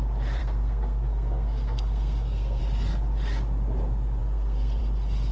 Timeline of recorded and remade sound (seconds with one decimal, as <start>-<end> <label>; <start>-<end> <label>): 0.0-0.4 recorded; 0.4-2.6 remade; 2.6-4.2 recorded; 4.2-4.8 remade; 4.8-5.3 recorded